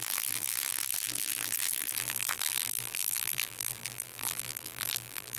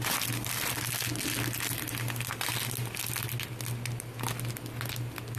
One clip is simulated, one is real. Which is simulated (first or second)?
first